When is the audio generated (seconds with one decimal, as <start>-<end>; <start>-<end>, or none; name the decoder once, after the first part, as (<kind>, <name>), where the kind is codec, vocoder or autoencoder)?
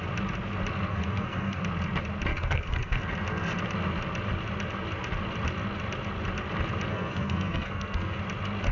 0.9-1.6 (codec, SNAC); 2.3-3.0; 6.9-8.2